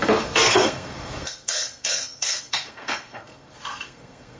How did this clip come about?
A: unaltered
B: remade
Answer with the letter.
B